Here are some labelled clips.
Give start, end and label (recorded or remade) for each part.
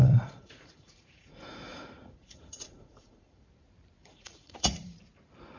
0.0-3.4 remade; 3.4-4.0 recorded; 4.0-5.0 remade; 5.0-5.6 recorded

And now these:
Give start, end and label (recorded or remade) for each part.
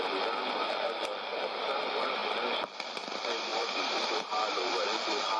0.0-1.3 recorded; 1.3-1.8 remade; 1.8-3.5 recorded; 3.5-4.7 remade; 4.7-5.4 recorded